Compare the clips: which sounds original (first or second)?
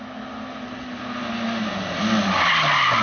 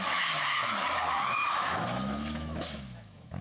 first